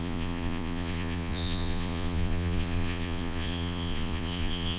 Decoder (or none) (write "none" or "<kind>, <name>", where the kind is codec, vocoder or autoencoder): vocoder, Vocos